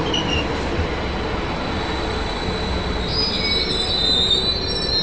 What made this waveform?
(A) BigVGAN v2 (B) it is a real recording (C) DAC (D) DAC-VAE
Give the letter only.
B